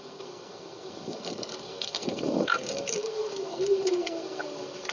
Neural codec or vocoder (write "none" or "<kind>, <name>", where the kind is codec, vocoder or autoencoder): codec, SNAC